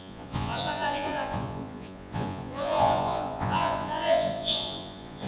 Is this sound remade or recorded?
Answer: remade